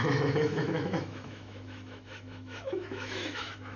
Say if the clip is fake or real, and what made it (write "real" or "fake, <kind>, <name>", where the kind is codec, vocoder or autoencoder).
fake, autoencoder, DAC-VAE